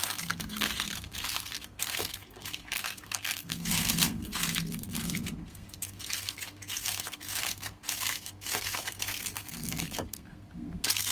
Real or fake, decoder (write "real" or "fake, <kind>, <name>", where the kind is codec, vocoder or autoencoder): fake, codec, SNAC